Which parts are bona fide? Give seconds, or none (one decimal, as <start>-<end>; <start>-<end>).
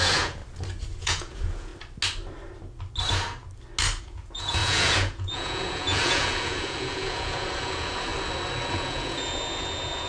0.4-1.0; 1.7-4.0; 8.1-8.7